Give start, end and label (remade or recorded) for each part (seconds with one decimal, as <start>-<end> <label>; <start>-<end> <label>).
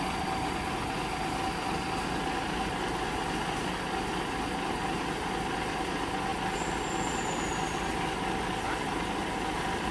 0.0-9.2 recorded; 9.2-9.9 remade